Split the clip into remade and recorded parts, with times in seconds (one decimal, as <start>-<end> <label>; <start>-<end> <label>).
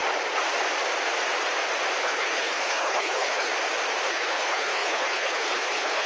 0.0-2.0 recorded; 2.0-3.5 remade; 3.5-4.1 recorded; 4.1-6.1 remade